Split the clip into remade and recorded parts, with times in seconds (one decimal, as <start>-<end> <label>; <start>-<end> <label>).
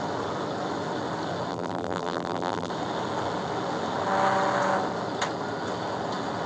0.0-1.5 recorded; 1.5-2.7 remade; 2.7-6.5 recorded